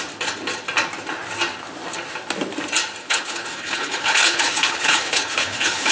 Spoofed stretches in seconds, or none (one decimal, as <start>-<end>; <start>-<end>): 3.0-5.9